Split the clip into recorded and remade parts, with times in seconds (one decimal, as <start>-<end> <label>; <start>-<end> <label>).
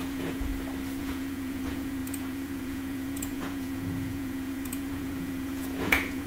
0.0-0.5 remade; 0.5-1.0 recorded; 1.0-6.3 remade